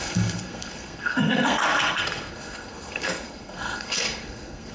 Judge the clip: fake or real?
fake